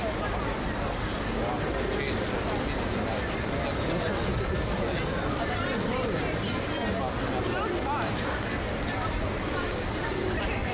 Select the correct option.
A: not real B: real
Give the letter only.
B